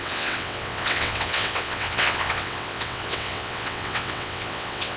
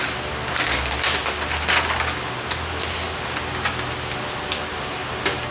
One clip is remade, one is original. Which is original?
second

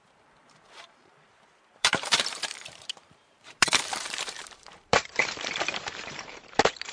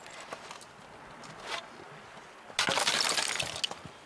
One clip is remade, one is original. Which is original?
second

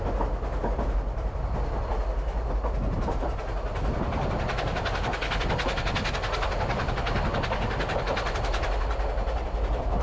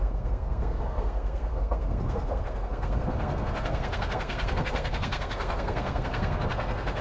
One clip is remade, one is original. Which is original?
first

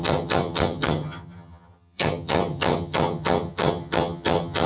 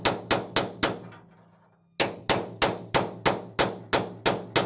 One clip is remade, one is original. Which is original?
second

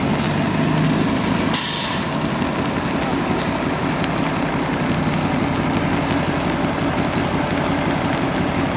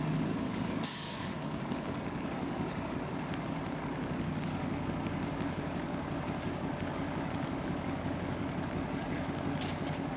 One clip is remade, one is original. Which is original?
first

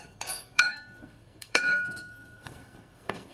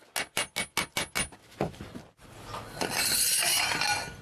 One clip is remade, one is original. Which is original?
second